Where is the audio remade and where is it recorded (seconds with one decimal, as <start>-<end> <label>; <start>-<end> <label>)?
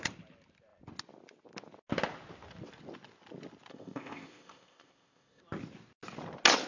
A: 0.0-3.7 recorded; 3.7-5.4 remade; 5.4-6.7 recorded